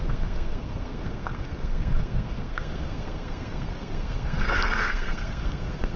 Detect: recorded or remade remade